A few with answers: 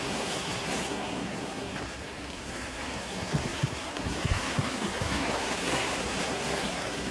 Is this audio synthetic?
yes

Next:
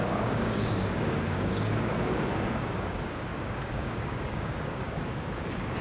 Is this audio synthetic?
yes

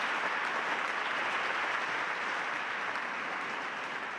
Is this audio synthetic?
no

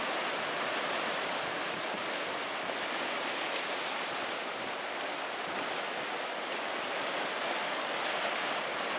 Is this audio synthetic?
no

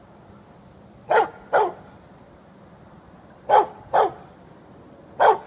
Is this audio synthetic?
no